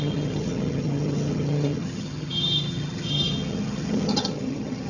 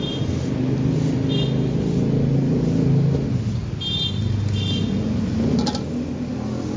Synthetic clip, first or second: first